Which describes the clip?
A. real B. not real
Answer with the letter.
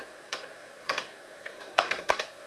B